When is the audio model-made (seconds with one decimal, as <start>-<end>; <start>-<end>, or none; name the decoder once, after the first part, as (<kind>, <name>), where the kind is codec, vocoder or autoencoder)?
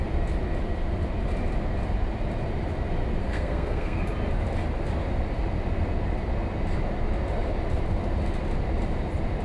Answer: 3.2-4.0 (codec, SNAC)